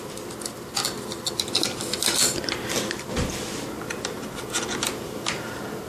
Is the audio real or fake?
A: real